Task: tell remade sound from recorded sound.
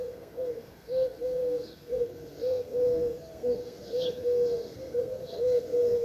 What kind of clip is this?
remade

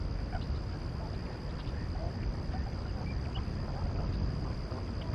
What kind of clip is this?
recorded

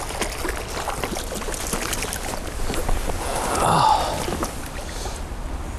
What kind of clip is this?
recorded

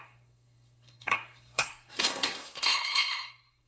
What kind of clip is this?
remade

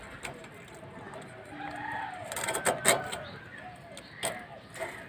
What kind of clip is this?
recorded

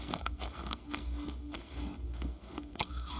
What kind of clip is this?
remade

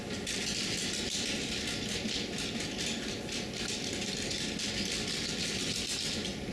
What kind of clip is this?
recorded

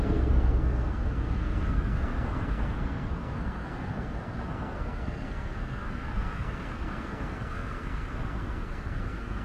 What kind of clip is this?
remade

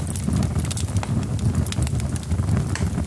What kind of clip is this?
recorded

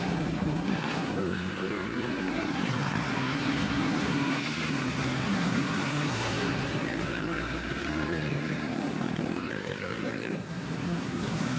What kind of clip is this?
remade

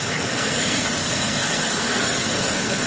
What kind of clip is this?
remade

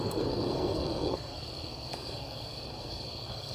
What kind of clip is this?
remade